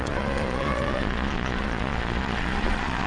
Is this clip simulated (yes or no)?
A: yes